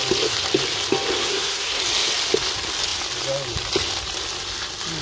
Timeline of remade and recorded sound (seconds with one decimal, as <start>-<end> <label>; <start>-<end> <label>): 0.0-1.2 recorded; 1.2-1.8 remade; 1.8-5.0 recorded